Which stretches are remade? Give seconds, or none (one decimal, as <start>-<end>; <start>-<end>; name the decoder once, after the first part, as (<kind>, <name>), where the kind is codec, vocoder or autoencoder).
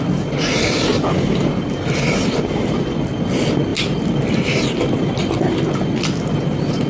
none